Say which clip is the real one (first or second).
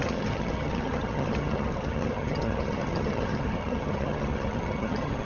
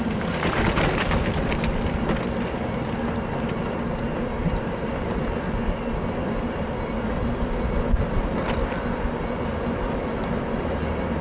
second